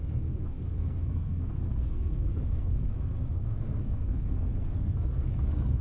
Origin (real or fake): fake